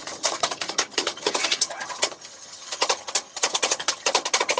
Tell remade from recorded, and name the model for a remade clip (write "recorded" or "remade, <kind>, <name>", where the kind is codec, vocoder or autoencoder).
remade, vocoder, HiFi-GAN